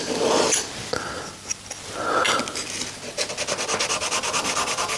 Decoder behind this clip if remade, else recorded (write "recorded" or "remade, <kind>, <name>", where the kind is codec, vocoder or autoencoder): recorded